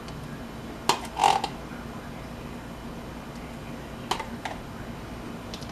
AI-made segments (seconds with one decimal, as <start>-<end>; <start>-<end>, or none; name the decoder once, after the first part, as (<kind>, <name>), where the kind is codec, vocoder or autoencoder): none